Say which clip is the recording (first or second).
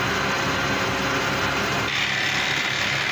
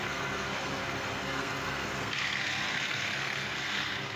first